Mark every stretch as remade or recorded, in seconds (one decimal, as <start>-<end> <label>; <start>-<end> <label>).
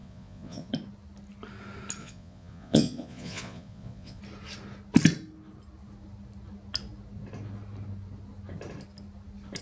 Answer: 0.0-0.7 remade; 0.7-2.0 recorded; 2.0-4.2 remade; 4.2-9.6 recorded